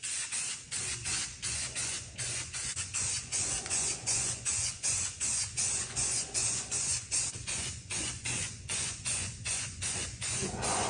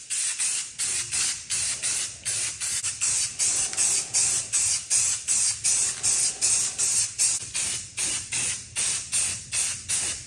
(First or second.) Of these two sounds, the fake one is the first